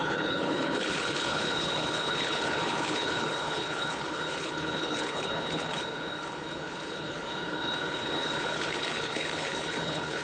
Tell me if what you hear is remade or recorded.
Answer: remade